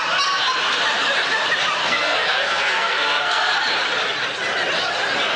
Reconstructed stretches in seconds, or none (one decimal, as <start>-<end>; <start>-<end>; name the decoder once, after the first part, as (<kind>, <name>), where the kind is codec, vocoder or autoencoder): 1.8-3.5 (codec, SNAC)